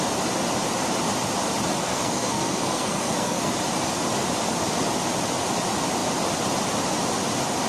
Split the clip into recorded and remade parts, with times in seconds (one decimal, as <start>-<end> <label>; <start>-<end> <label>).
0.0-1.8 recorded; 1.8-3.5 remade; 3.5-7.7 recorded